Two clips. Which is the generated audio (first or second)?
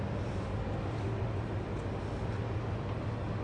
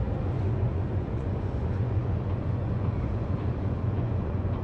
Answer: second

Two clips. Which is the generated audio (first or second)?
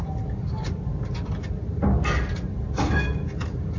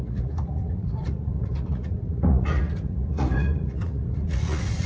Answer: second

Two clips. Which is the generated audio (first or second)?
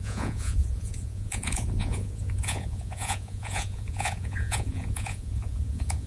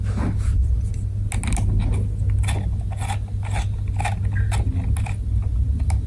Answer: first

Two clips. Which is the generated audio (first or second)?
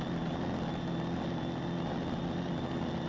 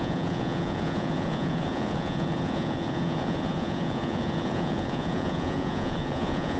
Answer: second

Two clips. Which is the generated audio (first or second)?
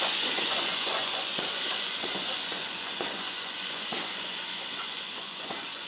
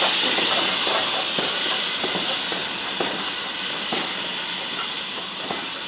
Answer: first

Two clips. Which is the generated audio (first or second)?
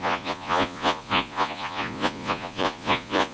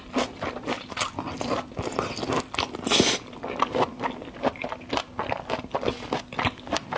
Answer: first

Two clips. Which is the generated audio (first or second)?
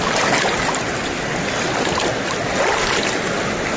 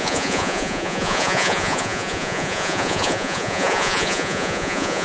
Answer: second